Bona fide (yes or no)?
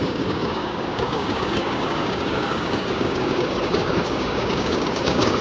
no